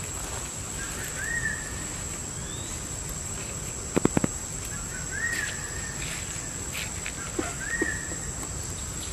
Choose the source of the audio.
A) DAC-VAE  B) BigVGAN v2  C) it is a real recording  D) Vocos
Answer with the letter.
C